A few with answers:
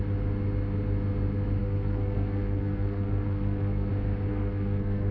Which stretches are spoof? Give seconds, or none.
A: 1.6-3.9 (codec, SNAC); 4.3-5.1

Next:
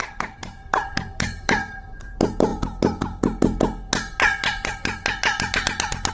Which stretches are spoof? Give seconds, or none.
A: 0.0-2.5 (vocoder, BigVGAN v2)